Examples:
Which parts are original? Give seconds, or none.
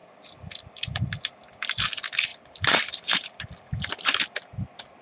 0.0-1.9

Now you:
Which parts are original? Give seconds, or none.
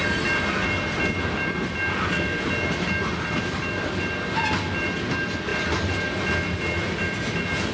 0.0-7.7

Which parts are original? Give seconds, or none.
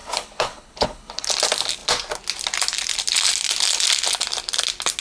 1.3-5.0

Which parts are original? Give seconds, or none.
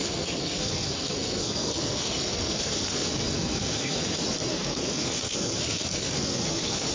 4.1-4.5